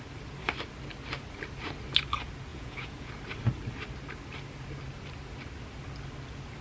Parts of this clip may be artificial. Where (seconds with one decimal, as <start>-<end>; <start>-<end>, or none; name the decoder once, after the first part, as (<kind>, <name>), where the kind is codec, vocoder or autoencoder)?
2.5-3.1 (vocoder, Vocos)